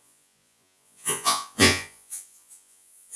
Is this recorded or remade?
remade